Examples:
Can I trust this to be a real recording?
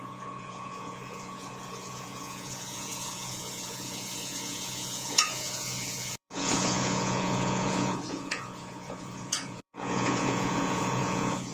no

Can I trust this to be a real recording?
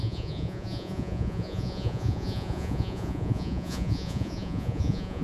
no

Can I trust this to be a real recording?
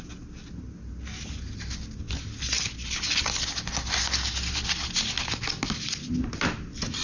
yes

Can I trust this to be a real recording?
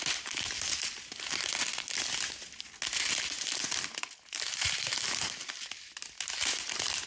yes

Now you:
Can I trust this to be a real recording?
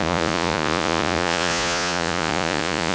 no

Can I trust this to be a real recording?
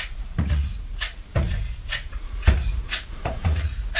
no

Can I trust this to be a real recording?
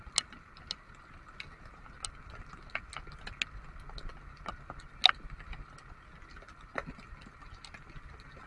yes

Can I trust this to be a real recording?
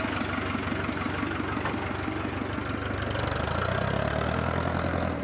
yes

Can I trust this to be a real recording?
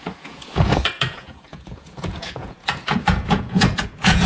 no